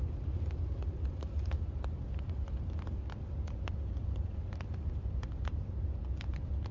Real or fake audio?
real